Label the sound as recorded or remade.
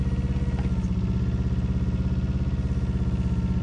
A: recorded